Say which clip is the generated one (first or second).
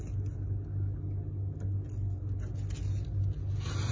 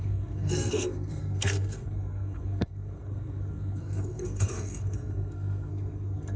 second